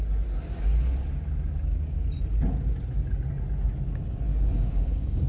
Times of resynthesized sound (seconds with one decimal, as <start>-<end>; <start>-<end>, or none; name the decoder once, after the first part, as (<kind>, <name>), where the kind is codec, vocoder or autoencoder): 4.3-5.3 (codec, DAC)